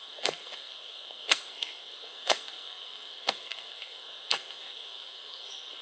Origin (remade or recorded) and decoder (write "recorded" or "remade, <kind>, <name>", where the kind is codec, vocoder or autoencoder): remade, codec, SNAC